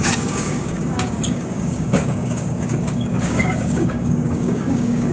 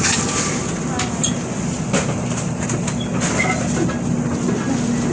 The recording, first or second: second